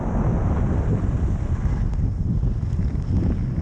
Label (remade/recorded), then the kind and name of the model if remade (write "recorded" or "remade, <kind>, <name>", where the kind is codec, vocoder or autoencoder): recorded